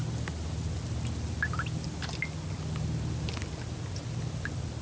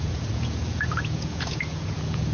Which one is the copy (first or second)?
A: second